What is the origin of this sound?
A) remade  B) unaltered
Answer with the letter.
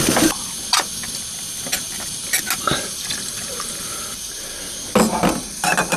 B